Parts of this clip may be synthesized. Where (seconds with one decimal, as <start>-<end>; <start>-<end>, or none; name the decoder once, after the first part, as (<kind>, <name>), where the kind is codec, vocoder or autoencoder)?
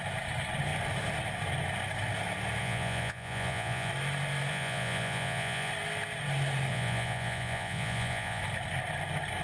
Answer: 2.6-3.9 (vocoder, Vocos); 4.5-5.7; 6.7-8.4